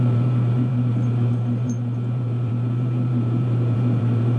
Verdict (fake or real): fake